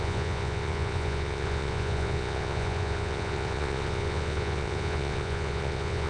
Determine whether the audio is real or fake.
fake